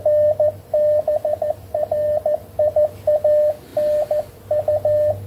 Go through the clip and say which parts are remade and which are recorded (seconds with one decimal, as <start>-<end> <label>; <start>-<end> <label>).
0.0-5.3 recorded

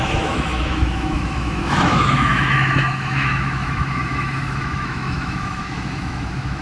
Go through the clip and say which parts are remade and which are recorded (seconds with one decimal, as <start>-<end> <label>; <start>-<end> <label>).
0.0-6.6 remade

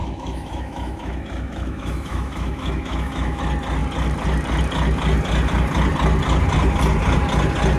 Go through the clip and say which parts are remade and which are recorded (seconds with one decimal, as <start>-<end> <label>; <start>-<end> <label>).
0.0-3.4 remade; 3.4-7.8 recorded

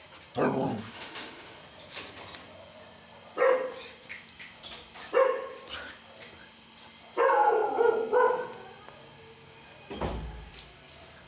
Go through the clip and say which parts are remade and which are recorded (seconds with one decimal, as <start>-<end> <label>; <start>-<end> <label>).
0.0-0.7 recorded; 0.7-1.6 remade; 1.6-11.3 recorded